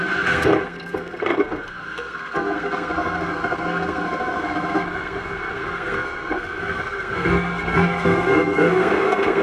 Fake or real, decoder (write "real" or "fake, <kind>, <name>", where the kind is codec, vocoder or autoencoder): fake, codec, SNAC